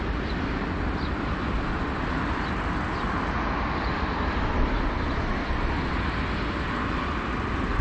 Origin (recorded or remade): recorded